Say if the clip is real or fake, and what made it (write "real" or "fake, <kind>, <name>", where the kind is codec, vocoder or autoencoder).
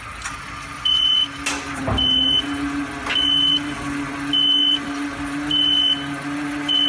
real